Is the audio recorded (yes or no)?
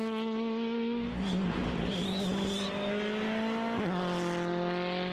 yes